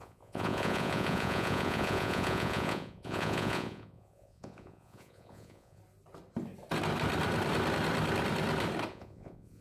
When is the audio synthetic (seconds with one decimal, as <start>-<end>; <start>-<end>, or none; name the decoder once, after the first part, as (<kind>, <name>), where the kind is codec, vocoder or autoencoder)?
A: 0.0-5.8 (vocoder, Vocos); 8.9-9.6

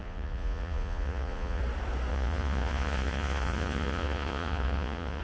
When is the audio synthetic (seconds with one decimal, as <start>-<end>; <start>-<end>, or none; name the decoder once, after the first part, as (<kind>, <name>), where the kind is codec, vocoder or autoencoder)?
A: 0.0-1.6 (vocoder, Vocos); 2.1-5.2

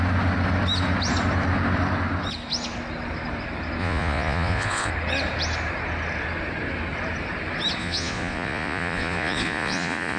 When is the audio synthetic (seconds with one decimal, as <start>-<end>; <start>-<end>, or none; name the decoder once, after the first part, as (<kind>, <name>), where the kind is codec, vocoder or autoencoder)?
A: 3.8-4.9 (vocoder, Vocos); 7.8-10.2

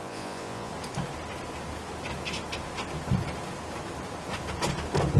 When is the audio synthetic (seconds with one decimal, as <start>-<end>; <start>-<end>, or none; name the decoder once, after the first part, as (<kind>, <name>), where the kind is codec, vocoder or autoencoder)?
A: 0.0-0.7 (vocoder, Vocos)